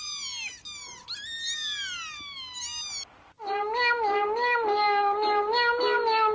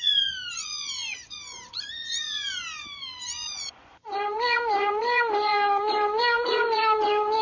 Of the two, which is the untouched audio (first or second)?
first